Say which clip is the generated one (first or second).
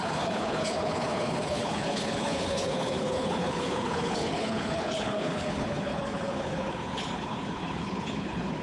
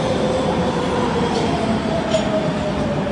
first